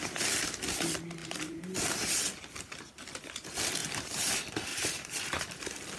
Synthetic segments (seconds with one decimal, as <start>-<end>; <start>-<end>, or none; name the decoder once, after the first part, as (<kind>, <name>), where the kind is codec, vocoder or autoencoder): 1.2-2.2 (vocoder, BigVGAN v2); 3.8-4.3; 4.7-5.4